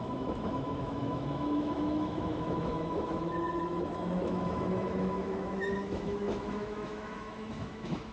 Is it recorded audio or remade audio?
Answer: remade